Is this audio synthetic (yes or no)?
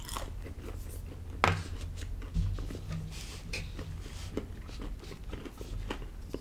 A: no